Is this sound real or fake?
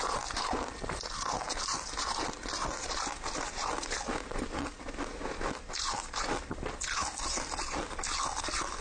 real